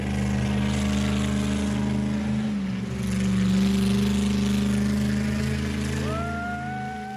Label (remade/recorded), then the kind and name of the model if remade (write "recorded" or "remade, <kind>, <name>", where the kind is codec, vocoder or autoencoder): recorded